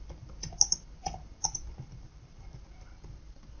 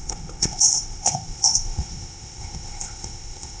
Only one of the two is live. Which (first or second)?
first